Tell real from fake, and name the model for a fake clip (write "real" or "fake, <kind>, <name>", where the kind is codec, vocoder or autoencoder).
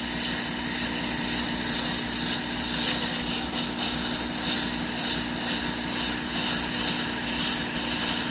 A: real